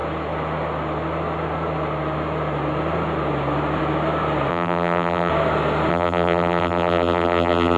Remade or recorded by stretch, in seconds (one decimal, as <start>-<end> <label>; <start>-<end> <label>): 0.0-4.5 recorded; 4.5-5.3 remade; 5.3-5.9 recorded; 5.9-7.8 remade